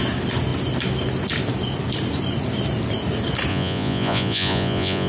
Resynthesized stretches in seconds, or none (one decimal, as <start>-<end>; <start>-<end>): 3.5-5.1